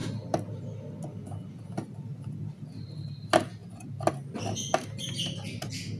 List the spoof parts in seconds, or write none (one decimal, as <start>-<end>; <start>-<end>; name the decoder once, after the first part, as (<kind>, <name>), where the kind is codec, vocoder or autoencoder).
none